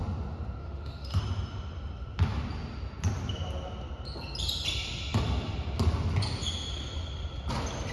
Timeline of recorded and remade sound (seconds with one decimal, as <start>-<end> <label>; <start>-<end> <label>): 0.0-0.6 recorded; 0.6-1.2 remade; 1.2-7.9 recorded